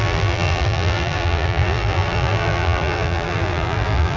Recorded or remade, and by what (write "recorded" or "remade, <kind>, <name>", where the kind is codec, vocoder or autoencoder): remade, vocoder, BigVGAN v2